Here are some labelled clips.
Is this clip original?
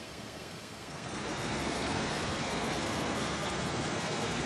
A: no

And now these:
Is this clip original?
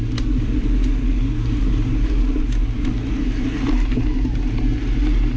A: yes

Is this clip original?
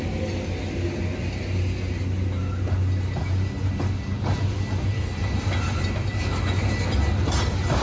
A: yes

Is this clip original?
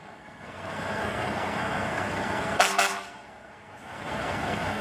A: no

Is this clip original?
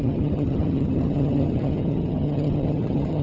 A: no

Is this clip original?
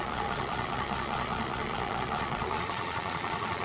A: no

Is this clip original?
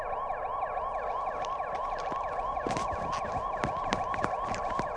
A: yes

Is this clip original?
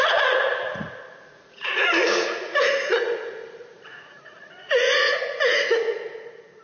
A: no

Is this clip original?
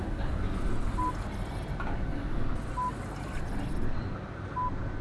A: yes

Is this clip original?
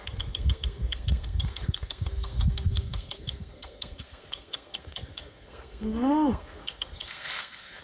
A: no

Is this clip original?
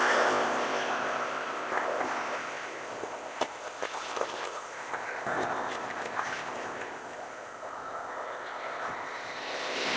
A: no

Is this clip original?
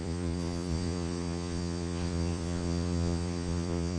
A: no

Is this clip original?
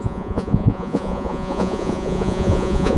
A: no